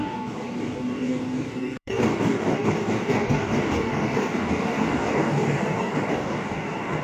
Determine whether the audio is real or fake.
fake